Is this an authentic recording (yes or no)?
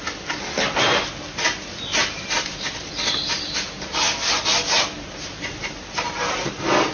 yes